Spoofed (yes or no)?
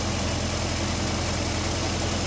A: no